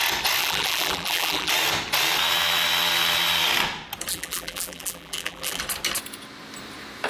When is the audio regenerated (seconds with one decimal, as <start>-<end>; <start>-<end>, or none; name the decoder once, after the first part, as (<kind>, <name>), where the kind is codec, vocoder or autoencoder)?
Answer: 0.4-1.5 (vocoder, BigVGAN v2); 4.1-5.6